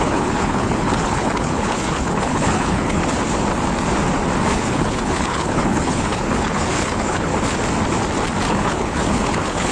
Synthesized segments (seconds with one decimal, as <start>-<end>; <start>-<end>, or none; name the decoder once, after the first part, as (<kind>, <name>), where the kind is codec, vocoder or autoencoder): 0.0-3.0 (codec, HILCodec); 4.5-7.3; 8.5-9.7